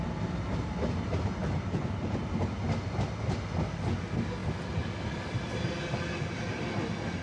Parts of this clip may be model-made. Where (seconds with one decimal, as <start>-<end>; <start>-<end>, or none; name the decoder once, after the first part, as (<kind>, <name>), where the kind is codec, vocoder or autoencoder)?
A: none